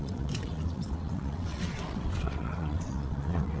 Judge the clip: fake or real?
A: fake